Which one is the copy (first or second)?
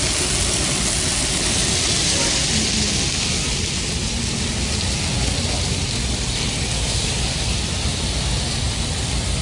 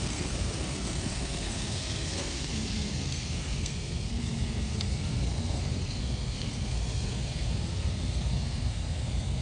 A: second